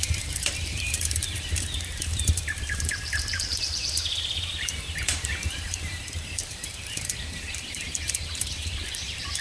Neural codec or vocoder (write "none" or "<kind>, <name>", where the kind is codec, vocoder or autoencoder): vocoder, BigVGAN v2